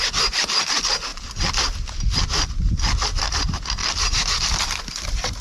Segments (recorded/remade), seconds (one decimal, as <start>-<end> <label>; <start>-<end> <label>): 0.0-5.4 recorded